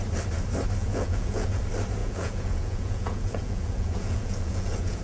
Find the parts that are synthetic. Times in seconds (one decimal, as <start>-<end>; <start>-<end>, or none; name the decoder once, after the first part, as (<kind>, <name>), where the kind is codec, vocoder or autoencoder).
0.8-1.6 (vocoder, Vocos); 2.0-5.0